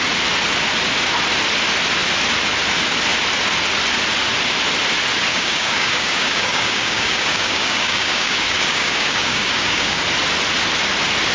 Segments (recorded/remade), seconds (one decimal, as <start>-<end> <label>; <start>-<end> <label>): 0.0-5.3 recorded; 5.3-10.0 remade; 10.0-11.3 recorded